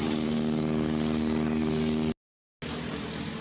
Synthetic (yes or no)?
no